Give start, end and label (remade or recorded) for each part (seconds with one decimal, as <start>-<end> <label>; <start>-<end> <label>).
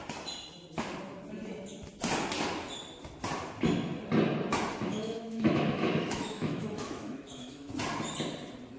0.0-4.9 recorded; 4.9-7.7 remade; 7.7-8.8 recorded